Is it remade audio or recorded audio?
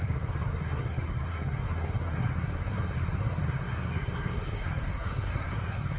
remade